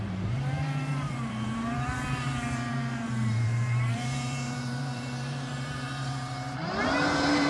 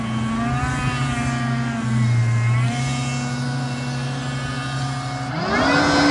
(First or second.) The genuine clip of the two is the second